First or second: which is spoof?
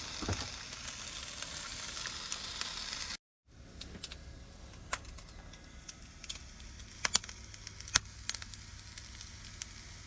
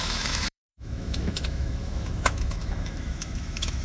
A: second